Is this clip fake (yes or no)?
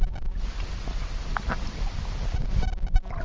no